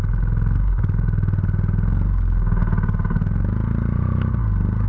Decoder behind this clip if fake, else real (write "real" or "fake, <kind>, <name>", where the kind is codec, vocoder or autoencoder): real